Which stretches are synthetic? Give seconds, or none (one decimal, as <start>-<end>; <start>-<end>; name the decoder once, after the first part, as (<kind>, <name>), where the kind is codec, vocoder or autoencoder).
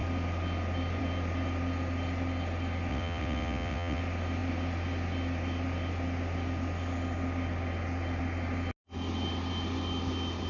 2.9-4.0 (vocoder, WaveNeXt)